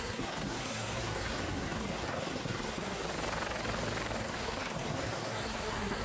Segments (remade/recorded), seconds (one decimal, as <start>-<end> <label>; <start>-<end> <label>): 0.0-3.0 remade; 3.0-4.2 recorded; 4.2-6.0 remade